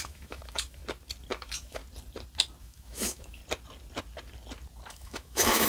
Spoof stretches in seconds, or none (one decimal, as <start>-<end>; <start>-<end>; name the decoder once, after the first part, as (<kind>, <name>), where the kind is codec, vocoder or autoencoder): 0.0-0.8 (autoencoder, DAC-VAE); 1.4-1.8; 2.6-3.4; 4.9-5.7